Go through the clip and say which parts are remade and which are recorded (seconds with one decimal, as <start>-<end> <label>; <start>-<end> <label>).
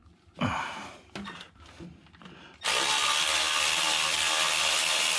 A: 0.0-5.2 recorded